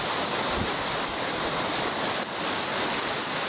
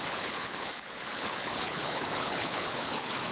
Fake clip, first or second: second